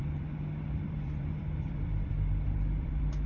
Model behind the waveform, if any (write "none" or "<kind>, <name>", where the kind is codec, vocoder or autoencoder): vocoder, BigVGAN v2